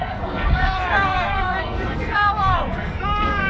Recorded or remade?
remade